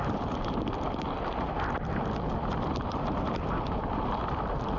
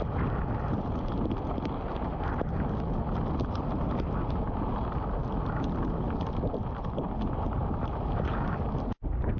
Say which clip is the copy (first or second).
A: first